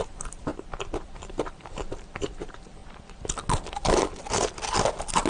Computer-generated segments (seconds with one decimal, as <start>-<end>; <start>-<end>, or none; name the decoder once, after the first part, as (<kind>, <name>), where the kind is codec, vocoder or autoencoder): 0.0-0.5 (vocoder, BigVGAN v2); 1.0-2.8